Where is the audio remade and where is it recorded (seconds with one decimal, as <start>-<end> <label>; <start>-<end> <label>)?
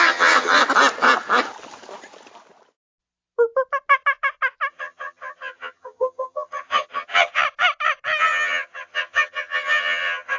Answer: 0.0-0.6 remade; 0.6-4.7 recorded; 4.7-7.4 remade; 7.4-8.2 recorded; 8.2-10.4 remade